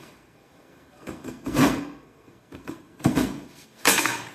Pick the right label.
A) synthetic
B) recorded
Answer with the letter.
A